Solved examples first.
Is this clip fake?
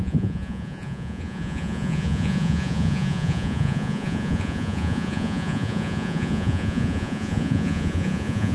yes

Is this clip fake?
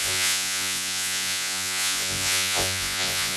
yes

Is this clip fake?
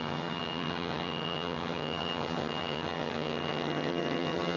yes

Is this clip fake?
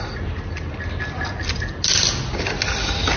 no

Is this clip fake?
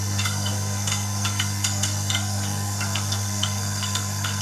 yes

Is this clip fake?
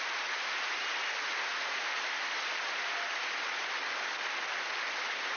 no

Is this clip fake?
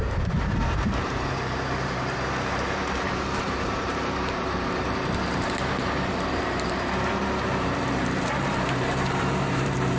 yes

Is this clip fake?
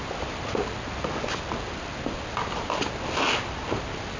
no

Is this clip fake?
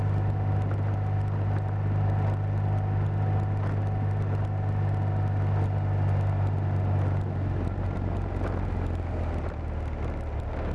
no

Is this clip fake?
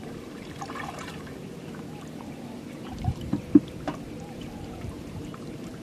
yes